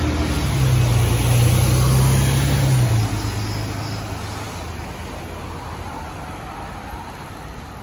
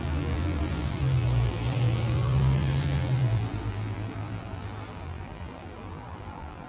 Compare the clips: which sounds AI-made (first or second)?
second